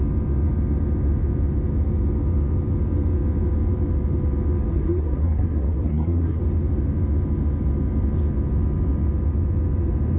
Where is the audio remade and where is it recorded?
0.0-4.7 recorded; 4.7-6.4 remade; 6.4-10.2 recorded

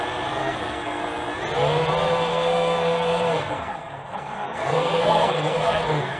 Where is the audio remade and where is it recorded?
0.0-0.4 recorded; 0.4-1.0 remade; 1.0-2.3 recorded; 2.3-6.2 remade

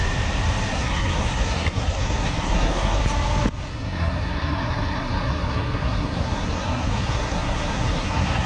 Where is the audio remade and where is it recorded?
0.0-0.7 recorded; 0.7-3.0 remade; 3.0-3.7 recorded; 3.7-8.5 remade

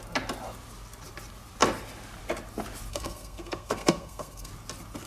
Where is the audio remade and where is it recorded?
0.0-2.9 recorded; 2.9-4.5 remade; 4.5-5.1 recorded

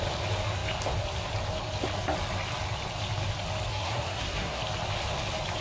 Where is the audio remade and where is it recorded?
0.0-3.7 recorded; 3.7-4.6 remade; 4.6-5.6 recorded

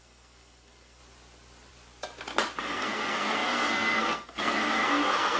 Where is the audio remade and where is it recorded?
0.0-1.0 remade; 1.0-2.6 recorded; 2.6-5.4 remade

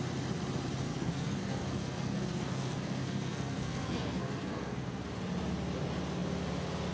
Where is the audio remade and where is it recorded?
0.0-0.9 recorded; 0.9-5.0 remade; 5.0-6.9 recorded